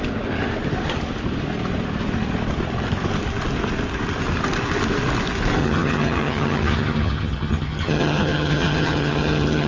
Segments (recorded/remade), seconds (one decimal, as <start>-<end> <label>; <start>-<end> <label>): 0.0-5.6 recorded; 5.6-9.7 remade